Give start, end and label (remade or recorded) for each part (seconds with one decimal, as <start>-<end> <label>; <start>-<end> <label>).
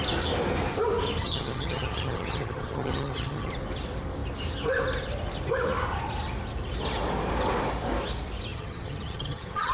0.0-1.2 recorded; 1.2-3.5 remade; 3.5-8.5 recorded; 8.5-9.7 remade